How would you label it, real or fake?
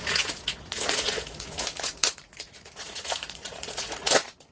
fake